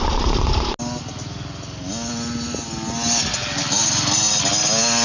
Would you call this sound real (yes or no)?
yes